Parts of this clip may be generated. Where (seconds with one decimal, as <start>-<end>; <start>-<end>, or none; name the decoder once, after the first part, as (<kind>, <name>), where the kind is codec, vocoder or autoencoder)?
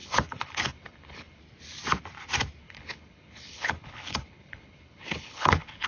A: 0.0-1.4 (codec, HILCodec); 2.6-5.9